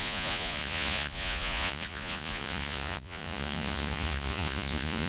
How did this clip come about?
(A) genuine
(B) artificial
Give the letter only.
B